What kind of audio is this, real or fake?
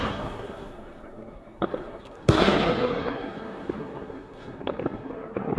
fake